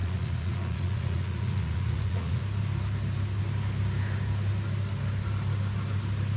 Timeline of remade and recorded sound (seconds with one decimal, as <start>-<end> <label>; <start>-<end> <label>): 0.0-2.4 remade; 2.4-6.4 recorded